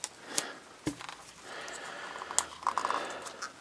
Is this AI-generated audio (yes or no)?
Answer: no